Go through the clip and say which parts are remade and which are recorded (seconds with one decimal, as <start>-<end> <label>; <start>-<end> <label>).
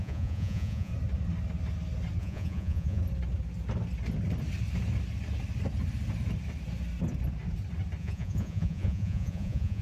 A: 0.0-0.9 remade; 0.9-2.2 recorded; 2.2-3.0 remade; 3.0-8.0 recorded; 8.0-9.8 remade